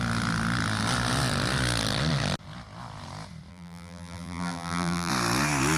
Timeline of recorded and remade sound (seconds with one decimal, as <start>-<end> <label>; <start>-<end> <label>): 0.0-3.5 recorded; 3.5-5.1 remade; 5.1-5.8 recorded